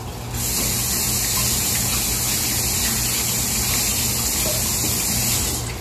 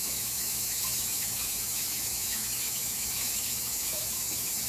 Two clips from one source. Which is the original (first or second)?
first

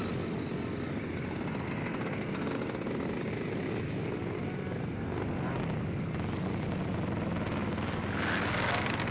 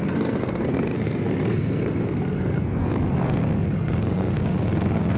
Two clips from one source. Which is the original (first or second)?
first